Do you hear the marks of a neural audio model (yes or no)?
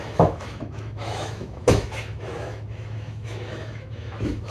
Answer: yes